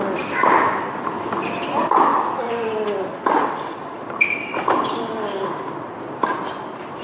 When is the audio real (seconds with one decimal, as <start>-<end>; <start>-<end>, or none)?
0.0-7.0